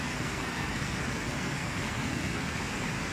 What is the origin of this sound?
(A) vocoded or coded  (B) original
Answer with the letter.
A